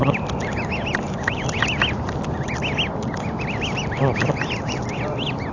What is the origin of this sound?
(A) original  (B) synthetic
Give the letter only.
A